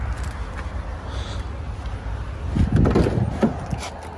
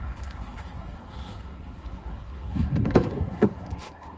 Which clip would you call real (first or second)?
first